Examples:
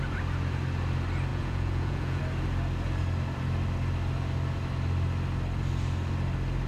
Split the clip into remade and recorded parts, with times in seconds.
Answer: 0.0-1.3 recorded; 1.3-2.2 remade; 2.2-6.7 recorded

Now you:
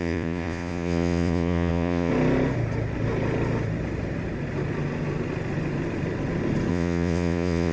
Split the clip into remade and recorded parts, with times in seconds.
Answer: 0.0-2.1 remade; 2.1-6.7 recorded; 6.7-7.7 remade